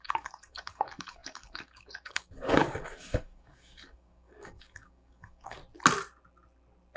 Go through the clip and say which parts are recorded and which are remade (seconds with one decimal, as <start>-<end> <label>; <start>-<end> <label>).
0.0-5.6 remade; 5.6-7.0 recorded